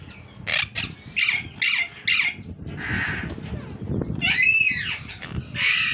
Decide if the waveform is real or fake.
real